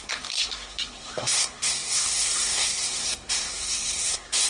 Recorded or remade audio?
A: remade